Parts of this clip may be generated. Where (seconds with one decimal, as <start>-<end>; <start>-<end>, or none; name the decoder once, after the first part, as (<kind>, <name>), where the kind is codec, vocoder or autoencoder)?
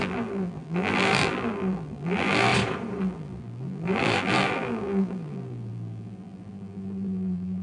0.0-2.5 (vocoder, BigVGAN v2); 3.0-7.6